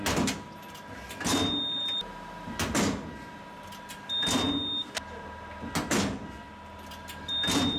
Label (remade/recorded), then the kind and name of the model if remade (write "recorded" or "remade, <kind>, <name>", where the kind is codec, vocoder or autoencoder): recorded